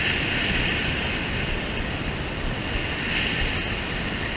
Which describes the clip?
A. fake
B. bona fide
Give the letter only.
B